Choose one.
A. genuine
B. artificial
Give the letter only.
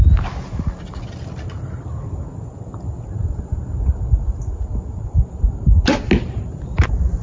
A